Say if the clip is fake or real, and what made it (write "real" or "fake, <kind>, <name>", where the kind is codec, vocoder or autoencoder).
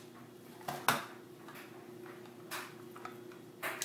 real